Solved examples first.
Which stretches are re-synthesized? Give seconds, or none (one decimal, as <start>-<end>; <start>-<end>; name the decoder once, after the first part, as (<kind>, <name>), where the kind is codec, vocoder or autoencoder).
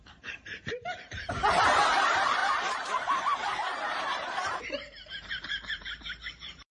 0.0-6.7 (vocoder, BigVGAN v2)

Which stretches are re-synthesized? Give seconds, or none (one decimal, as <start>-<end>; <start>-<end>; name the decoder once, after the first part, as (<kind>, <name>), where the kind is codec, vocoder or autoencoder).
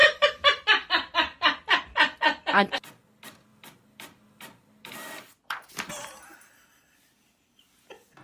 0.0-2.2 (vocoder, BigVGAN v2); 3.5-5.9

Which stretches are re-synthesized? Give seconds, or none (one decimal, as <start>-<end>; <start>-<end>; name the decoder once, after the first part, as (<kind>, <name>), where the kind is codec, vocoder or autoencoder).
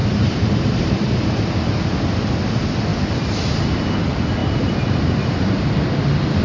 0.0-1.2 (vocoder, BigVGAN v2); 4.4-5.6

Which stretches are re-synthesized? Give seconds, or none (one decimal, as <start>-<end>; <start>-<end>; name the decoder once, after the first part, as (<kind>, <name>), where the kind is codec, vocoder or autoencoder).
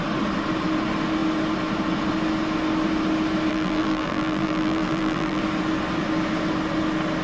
3.5-5.4 (vocoder, BigVGAN v2)